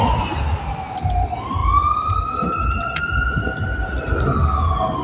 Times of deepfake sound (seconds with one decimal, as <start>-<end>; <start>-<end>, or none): none